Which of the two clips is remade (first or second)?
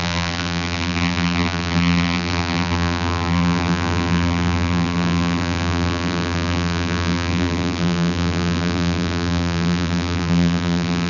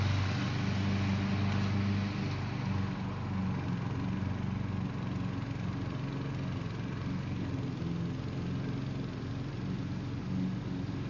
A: first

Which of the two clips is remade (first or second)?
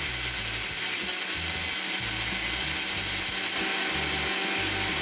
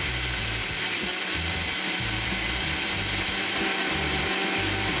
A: second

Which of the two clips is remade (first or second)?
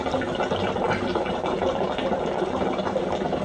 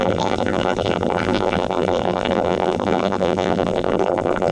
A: second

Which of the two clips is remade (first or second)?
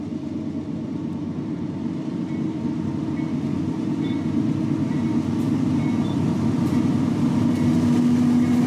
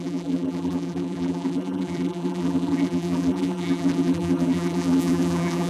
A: second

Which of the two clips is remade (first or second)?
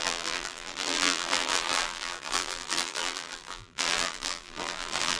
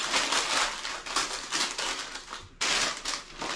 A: first